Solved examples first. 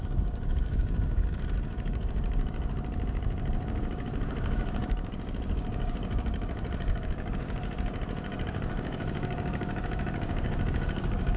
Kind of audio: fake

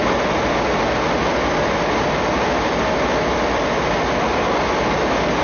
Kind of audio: real